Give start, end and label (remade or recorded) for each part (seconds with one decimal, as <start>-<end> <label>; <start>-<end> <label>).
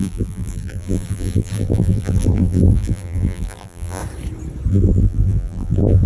0.0-4.0 remade; 4.0-4.7 recorded; 4.7-6.1 remade